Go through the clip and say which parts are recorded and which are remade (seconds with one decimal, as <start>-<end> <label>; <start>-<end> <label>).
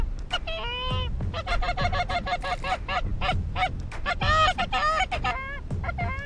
0.0-6.3 recorded